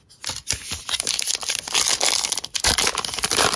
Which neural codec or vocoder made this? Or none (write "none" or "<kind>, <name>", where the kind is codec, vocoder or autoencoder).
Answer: none